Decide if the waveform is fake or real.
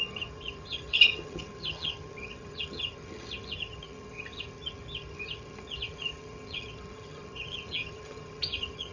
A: fake